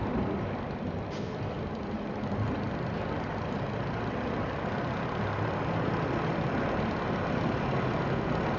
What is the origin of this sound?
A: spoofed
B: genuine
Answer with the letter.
B